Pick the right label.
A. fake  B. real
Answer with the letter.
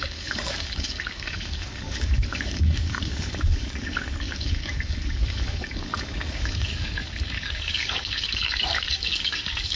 A